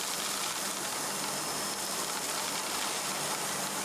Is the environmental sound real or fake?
real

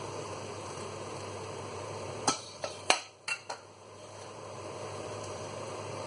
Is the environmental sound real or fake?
fake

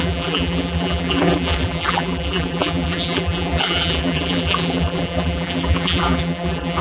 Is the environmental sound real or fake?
fake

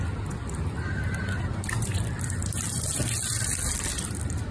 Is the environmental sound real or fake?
real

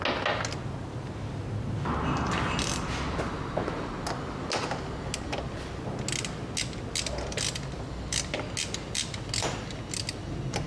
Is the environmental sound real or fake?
real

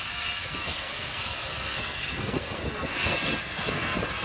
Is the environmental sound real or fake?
fake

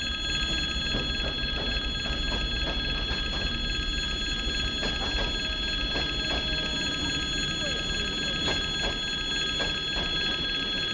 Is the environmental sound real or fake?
real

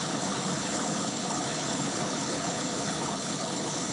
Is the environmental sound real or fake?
fake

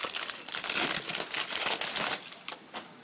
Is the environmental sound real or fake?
real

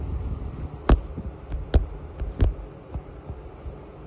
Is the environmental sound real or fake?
real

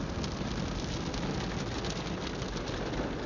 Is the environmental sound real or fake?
real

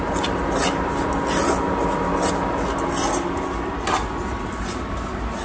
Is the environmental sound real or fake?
real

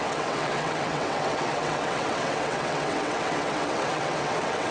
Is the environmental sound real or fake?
fake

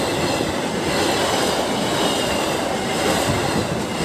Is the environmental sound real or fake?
real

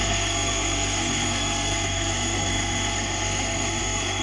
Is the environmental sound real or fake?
fake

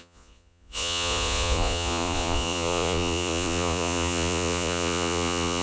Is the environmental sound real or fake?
fake